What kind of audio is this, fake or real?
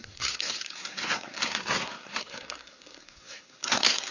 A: fake